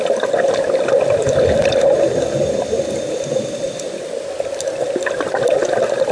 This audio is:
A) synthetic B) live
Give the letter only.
B